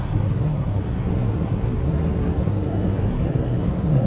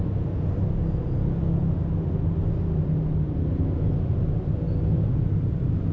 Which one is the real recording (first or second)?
second